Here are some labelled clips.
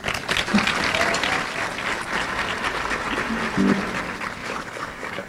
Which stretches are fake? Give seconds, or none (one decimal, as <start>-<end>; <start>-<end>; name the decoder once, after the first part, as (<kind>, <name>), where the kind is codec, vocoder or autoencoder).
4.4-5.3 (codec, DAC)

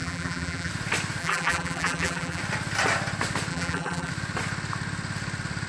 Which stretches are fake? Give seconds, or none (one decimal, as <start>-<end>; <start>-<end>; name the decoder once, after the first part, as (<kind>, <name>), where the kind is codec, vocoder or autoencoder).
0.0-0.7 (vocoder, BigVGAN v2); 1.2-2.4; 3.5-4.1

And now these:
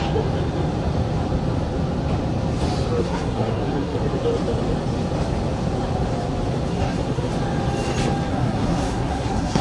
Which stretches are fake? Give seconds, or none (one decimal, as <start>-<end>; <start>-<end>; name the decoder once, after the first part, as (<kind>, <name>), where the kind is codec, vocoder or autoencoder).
3.0-4.0 (codec, SNAC); 6.7-7.3; 8.3-9.6

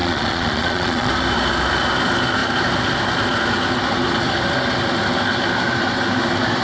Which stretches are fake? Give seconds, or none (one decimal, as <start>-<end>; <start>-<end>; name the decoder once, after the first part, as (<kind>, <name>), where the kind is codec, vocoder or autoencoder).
0.0-1.1 (vocoder, Vocos)